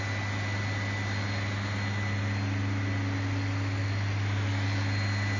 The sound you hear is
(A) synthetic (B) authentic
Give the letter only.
B